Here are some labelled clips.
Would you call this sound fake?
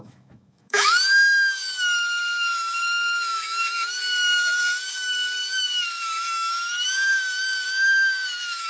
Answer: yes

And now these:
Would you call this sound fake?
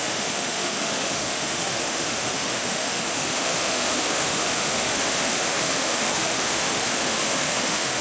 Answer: yes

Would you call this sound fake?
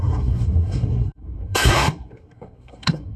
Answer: yes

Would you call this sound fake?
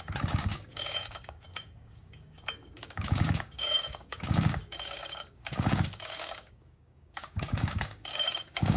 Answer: yes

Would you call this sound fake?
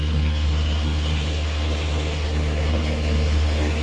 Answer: yes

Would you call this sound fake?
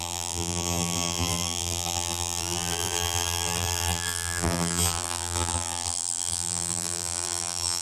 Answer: yes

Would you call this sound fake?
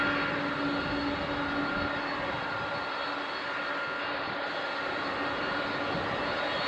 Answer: no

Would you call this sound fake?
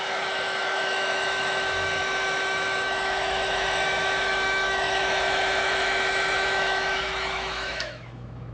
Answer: yes